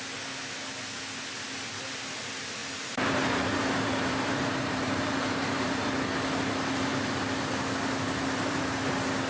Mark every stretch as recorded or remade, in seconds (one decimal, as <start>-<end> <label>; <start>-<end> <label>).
0.0-2.6 recorded; 2.6-5.8 remade; 5.8-9.3 recorded